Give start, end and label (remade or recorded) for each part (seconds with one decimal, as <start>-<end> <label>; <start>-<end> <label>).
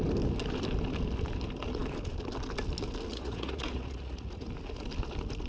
0.0-3.1 recorded; 3.1-4.5 remade; 4.5-5.5 recorded